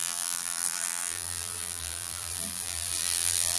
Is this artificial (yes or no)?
yes